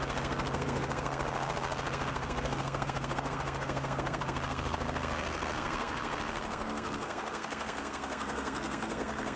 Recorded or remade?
remade